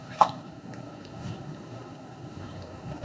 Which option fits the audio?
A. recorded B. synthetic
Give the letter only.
B